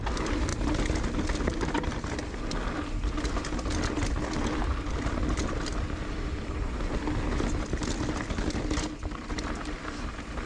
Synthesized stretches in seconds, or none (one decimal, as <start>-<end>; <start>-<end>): none